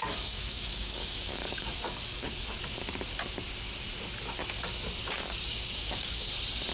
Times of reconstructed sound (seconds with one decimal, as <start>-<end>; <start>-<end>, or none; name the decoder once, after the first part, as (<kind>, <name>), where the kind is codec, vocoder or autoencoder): 0.0-2.8 (codec, DAC); 5.0-6.3